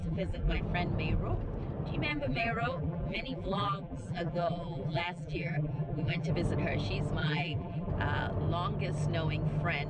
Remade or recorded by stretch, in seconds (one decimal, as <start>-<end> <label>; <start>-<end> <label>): 0.0-0.6 remade; 0.6-2.1 recorded; 2.1-6.3 remade; 6.3-7.2 recorded; 7.2-7.9 remade; 7.9-9.9 recorded

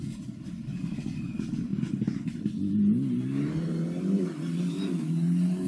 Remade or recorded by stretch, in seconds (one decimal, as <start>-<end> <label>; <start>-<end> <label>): 0.0-5.7 recorded

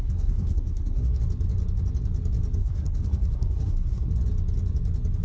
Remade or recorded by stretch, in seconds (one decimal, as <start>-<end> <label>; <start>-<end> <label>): 0.0-1.2 remade; 1.2-2.6 recorded; 2.6-4.1 remade; 4.1-5.2 recorded

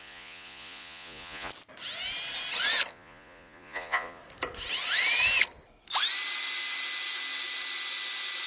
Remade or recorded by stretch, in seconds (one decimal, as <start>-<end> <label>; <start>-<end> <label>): 0.0-1.5 remade; 1.5-2.9 recorded; 2.9-4.2 remade; 4.2-8.5 recorded

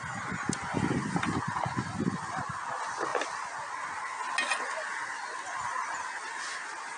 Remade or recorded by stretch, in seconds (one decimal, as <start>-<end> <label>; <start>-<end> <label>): 0.0-7.0 recorded

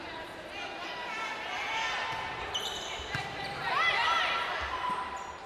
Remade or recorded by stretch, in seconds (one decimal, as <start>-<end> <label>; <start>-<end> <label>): 0.0-4.0 remade; 4.0-5.5 recorded

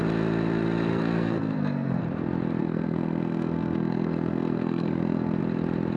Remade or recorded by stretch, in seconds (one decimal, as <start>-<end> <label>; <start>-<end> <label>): 0.0-0.9 recorded; 0.9-2.0 remade; 2.0-2.6 recorded; 2.6-5.4 remade; 5.4-6.0 recorded